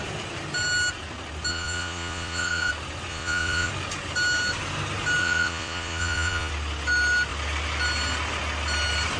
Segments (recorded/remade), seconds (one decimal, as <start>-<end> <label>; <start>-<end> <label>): 0.0-1.5 recorded; 1.5-2.7 remade; 2.7-3.1 recorded; 3.1-3.7 remade; 3.7-5.2 recorded; 5.2-6.5 remade; 6.5-9.2 recorded